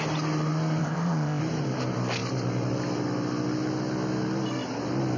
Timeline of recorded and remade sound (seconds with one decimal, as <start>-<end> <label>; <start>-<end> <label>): 0.0-0.8 recorded; 0.8-1.4 remade; 1.4-5.2 recorded